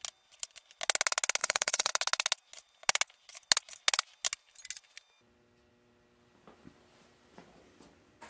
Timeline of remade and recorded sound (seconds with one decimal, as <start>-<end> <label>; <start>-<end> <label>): 0.0-1.4 recorded; 1.4-1.9 remade; 1.9-8.3 recorded